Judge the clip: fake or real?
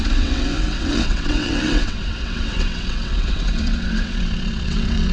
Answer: fake